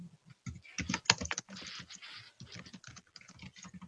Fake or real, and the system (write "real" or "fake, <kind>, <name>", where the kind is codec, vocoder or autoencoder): real